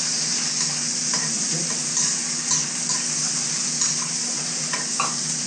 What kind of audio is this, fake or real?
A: real